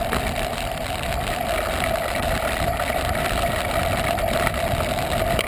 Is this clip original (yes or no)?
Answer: no